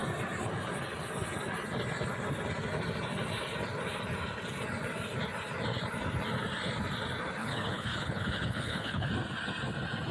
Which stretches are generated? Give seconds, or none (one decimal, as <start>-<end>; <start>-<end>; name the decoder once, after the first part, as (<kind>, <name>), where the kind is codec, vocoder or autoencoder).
7.4-9.1 (codec, HILCodec)